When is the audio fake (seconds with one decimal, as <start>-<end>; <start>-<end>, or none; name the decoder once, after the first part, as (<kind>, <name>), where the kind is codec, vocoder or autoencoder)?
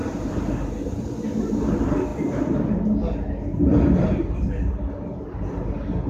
0.0-0.5 (vocoder, BigVGAN v2)